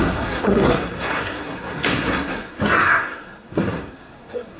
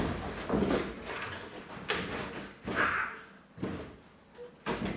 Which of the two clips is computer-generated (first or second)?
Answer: first